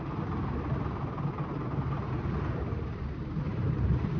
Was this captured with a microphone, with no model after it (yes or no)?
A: yes